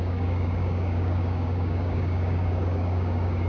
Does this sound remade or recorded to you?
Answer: remade